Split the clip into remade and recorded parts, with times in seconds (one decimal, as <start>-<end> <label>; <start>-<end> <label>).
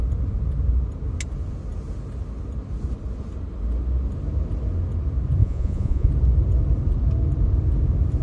0.0-5.4 recorded; 5.4-6.1 remade; 6.1-8.2 recorded